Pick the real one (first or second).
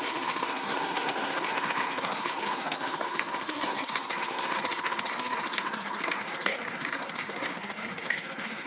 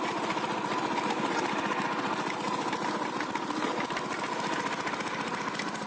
second